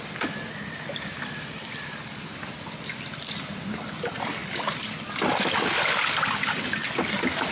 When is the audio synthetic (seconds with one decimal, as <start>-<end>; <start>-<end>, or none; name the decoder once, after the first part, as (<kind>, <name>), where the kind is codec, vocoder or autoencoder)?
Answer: none